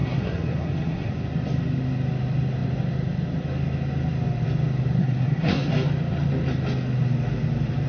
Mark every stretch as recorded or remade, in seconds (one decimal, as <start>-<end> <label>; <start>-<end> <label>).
0.0-1.1 remade; 1.1-5.0 recorded; 5.0-5.7 remade; 5.7-7.9 recorded